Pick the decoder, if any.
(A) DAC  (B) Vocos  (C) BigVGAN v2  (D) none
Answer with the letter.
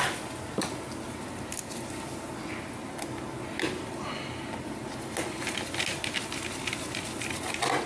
D